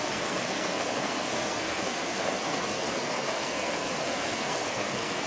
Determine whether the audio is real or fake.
fake